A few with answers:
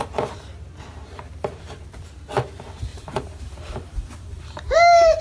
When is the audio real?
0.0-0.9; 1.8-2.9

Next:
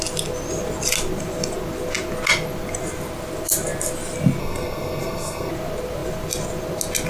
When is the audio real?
0.0-4.4; 5.5-7.1